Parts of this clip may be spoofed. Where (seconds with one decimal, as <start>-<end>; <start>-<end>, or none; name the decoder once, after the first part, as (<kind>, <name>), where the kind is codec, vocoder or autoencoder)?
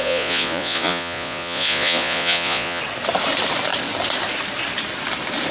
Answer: 0.0-2.8 (vocoder, Vocos)